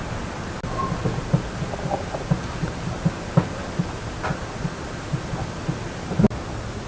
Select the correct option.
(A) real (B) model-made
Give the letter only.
A